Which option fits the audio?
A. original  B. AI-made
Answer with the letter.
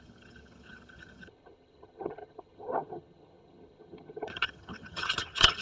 B